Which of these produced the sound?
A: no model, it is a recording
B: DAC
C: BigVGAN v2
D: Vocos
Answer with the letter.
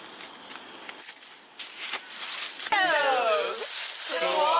A